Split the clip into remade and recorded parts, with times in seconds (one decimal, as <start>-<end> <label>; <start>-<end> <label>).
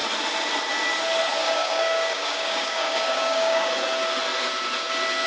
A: 0.0-1.4 recorded; 1.4-3.7 remade; 3.7-5.3 recorded